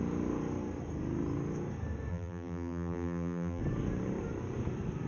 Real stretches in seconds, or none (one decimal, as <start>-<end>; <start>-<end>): 0.0-2.1; 3.6-5.1